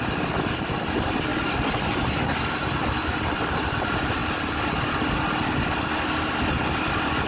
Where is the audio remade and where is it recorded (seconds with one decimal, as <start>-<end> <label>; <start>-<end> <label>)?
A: 0.0-7.3 recorded